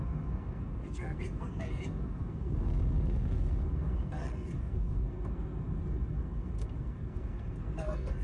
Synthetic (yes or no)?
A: yes